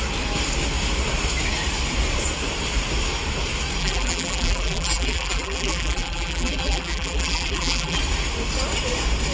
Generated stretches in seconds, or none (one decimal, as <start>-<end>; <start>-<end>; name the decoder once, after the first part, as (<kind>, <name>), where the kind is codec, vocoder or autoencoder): 3.8-8.0 (vocoder, BigVGAN v2)